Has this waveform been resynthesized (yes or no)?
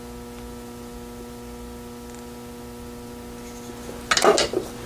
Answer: no